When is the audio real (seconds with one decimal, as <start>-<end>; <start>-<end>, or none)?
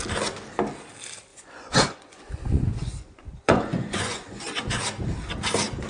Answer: 0.0-1.3; 4.8-5.9